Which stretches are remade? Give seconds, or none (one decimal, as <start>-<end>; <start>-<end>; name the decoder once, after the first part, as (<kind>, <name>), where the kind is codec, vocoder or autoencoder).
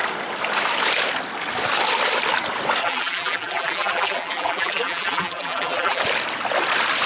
2.8-6.0 (vocoder, BigVGAN v2)